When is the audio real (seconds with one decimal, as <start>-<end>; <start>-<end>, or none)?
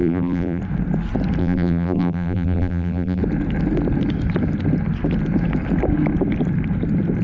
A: 0.6-1.4; 3.2-7.2